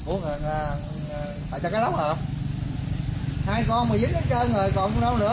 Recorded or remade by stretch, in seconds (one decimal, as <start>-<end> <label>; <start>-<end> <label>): 0.0-5.3 recorded